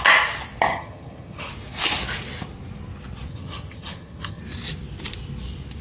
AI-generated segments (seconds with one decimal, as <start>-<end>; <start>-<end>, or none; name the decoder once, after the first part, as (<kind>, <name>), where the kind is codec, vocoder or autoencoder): 0.7-1.5 (vocoder, HiFi-GAN); 3.3-4.4